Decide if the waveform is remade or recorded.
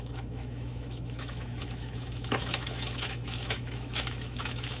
remade